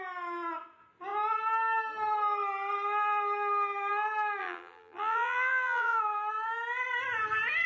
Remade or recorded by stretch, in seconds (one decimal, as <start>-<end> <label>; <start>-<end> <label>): 0.0-4.4 recorded; 4.4-6.0 remade; 6.0-7.7 recorded